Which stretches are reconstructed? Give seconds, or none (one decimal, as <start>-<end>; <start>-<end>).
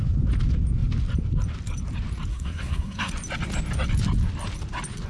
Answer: 2.3-3.1